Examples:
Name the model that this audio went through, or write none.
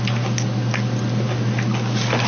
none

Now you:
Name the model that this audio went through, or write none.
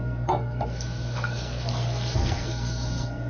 codec, SNAC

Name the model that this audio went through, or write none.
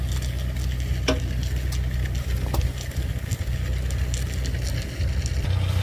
none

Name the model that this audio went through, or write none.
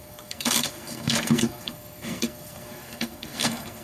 codec, SNAC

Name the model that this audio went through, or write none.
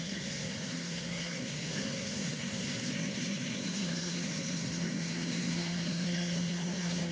codec, SNAC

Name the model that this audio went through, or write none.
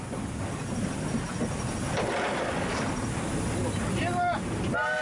none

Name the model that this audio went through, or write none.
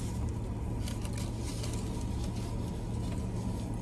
none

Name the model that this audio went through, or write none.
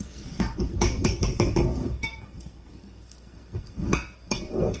codec, SNAC